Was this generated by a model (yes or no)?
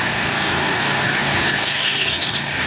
yes